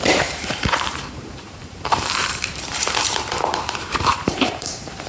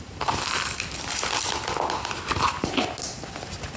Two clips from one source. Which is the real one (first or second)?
second